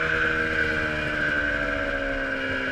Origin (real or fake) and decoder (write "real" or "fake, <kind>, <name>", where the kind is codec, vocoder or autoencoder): real